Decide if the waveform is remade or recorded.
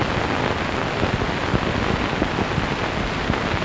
recorded